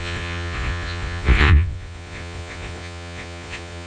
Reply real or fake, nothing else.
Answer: fake